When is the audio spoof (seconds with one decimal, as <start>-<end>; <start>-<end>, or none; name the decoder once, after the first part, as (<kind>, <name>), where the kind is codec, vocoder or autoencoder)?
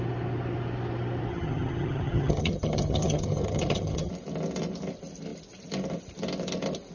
1.3-4.1 (vocoder, HiFi-GAN)